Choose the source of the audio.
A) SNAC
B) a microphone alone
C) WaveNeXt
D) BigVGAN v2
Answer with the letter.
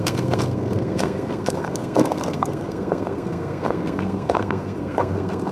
A